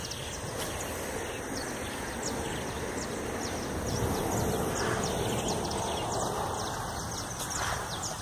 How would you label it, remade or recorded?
recorded